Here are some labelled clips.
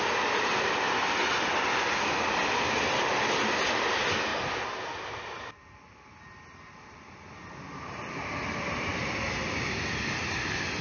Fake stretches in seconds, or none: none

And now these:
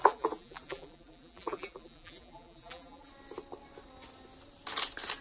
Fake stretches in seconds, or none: 0.0-3.1 (vocoder, BigVGAN v2)

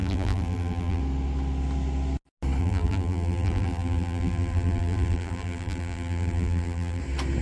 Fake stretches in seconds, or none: 0.0-1.0 (vocoder, BigVGAN v2); 2.6-7.0

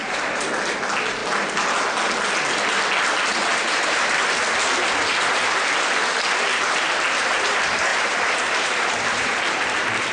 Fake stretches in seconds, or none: 0.0-0.5 (vocoder, BigVGAN v2); 3.3-4.2; 7.9-9.4

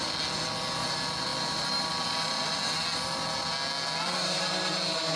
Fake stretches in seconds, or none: none

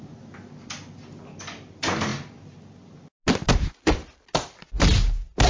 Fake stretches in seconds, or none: none

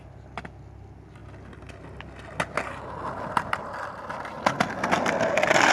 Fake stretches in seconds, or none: none